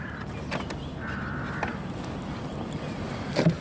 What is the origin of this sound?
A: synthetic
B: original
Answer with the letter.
B